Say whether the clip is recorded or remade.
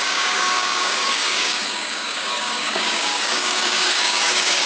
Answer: remade